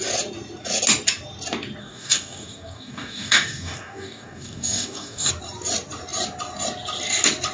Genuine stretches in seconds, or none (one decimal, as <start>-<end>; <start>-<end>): 0.0-1.8; 5.3-7.5